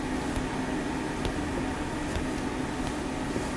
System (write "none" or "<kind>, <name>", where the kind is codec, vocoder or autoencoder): none